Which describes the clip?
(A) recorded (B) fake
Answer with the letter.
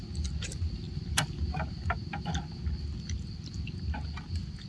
A